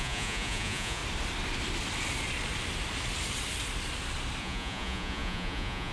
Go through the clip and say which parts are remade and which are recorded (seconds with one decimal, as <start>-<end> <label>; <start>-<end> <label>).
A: 0.0-1.0 remade; 1.0-4.4 recorded; 4.4-5.9 remade